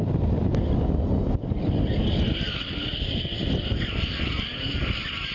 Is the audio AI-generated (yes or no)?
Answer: no